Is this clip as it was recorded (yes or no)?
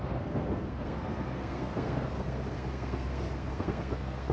no